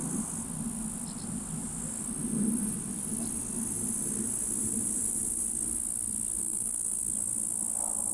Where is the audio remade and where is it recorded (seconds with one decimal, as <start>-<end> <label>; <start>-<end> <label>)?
0.0-6.4 recorded; 6.4-7.0 remade; 7.0-8.1 recorded